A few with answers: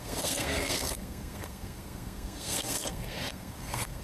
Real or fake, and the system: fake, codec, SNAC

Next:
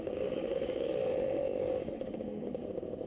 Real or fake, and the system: fake, autoencoder, DAC-VAE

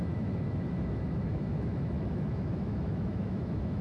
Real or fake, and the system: fake, autoencoder, DAC-VAE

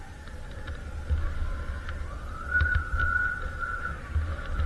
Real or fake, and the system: real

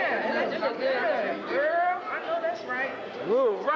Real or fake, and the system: real